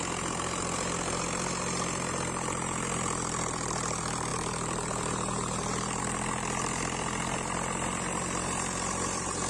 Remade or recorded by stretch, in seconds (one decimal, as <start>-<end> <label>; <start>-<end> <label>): 0.0-9.5 recorded